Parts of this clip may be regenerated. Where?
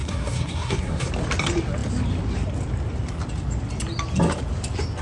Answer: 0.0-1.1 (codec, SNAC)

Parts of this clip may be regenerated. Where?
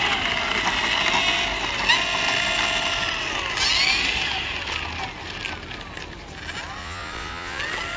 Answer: 6.8-7.6 (vocoder, Vocos)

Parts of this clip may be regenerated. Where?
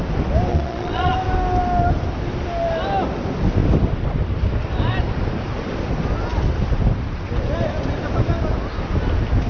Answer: 0.5-1.1 (vocoder, Vocos)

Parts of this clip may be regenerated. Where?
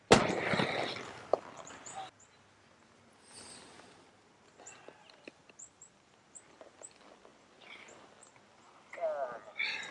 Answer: none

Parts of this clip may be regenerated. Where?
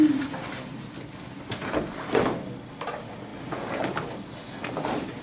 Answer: none